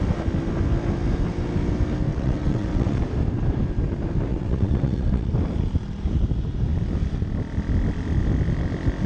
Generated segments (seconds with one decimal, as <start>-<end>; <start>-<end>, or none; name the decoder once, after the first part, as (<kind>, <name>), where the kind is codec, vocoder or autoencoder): 2.1-3.0 (vocoder, WaveNeXt); 4.3-5.3